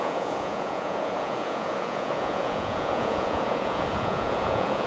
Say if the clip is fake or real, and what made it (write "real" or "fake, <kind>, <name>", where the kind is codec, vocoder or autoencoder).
fake, vocoder, Vocos